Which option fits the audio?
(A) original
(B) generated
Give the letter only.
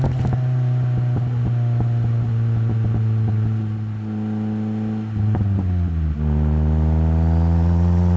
A